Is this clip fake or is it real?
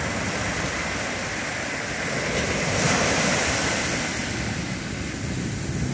real